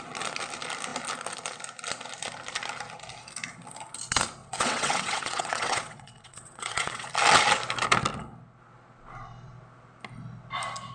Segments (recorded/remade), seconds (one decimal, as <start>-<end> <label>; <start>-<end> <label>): 0.0-4.4 recorded; 4.4-7.1 remade; 7.1-10.9 recorded